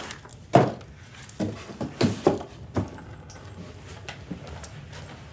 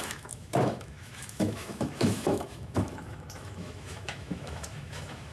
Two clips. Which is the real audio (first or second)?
first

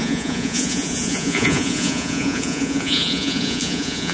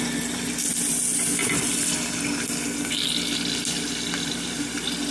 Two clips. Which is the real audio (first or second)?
second